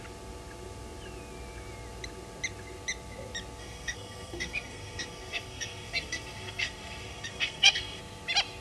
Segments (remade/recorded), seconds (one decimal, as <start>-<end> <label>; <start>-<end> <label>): 0.0-3.6 recorded; 3.6-8.0 remade; 8.0-8.6 recorded